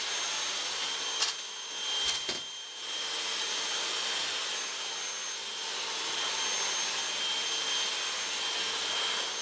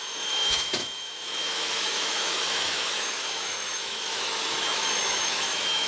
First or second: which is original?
first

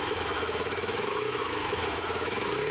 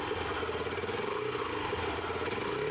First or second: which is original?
second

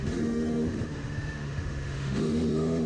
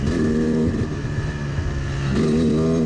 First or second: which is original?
second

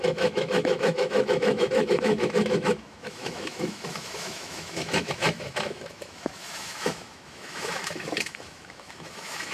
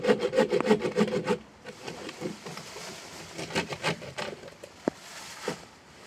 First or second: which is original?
second